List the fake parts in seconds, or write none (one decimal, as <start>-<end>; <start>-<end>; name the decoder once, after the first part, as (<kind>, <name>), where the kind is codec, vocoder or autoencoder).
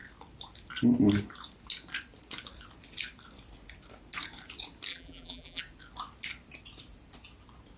4.9-5.6 (vocoder, BigVGAN v2)